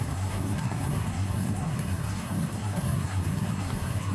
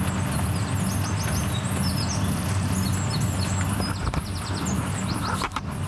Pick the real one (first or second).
second